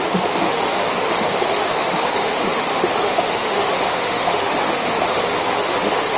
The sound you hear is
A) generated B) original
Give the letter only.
A